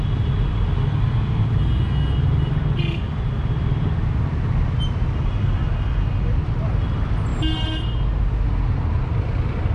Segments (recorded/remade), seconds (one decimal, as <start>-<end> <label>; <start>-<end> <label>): 0.0-9.7 recorded